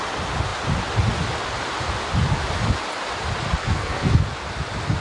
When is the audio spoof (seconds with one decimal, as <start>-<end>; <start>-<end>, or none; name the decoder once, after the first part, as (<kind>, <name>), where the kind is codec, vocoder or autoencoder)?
3.6-4.2 (codec, SNAC)